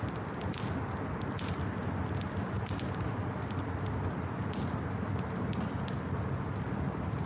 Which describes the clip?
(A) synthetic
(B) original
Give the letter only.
B